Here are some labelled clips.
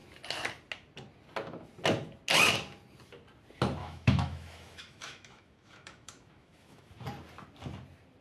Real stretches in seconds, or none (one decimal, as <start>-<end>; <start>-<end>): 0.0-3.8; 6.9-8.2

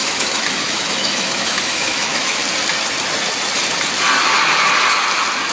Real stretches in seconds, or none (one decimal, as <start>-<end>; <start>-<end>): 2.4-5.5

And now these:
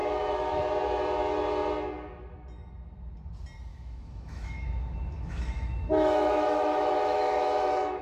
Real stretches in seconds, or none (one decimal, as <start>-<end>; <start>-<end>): 0.6-3.7